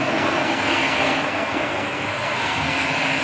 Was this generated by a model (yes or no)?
yes